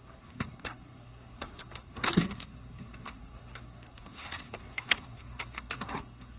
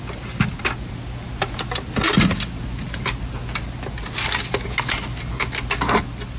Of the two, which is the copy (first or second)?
first